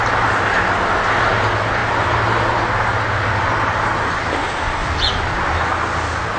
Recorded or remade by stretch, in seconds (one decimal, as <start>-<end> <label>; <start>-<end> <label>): 0.0-4.8 recorded; 4.8-5.5 remade; 5.5-6.4 recorded